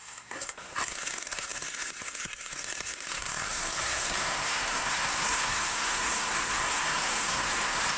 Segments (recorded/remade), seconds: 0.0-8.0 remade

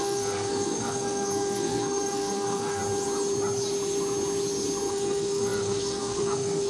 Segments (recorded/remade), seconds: 0.0-2.8 remade; 2.8-4.9 recorded; 4.9-6.7 remade

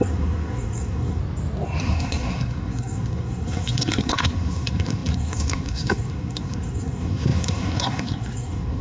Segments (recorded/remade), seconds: 0.0-1.2 remade; 1.2-1.8 recorded; 1.8-8.8 remade